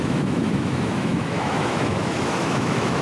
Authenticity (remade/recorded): remade